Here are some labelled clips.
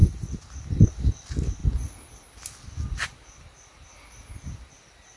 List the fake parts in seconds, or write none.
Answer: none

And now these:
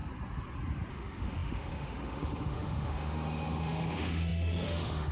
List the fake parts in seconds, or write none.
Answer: 0.9-5.1 (autoencoder, DAC-VAE)

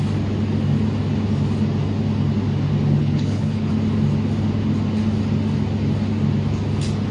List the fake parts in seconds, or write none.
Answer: 3.0-3.7 (codec, HILCodec)

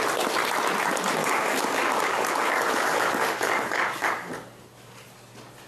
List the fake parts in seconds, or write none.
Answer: 1.2-4.3 (codec, DAC)

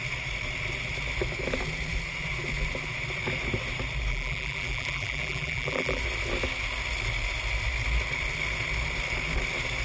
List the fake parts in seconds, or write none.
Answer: 4.1-6.0 (vocoder, BigVGAN v2)

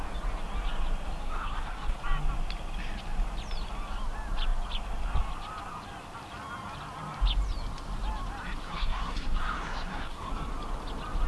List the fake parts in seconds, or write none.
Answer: 1.2-2.0 (codec, SNAC); 8.6-10.3

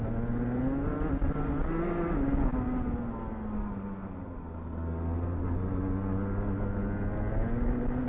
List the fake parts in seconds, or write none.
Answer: none

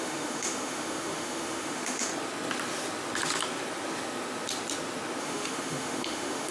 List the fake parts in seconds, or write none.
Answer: 0.0-2.1 (autoencoder, DAC-VAE); 5.2-6.5